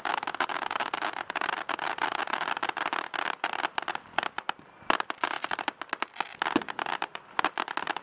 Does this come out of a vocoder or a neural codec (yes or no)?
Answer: no